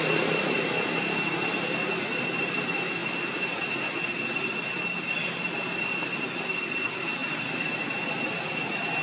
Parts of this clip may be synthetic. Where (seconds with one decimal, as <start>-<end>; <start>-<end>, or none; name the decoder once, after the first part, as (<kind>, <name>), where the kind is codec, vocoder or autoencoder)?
none